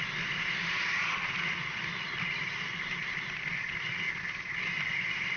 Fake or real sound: real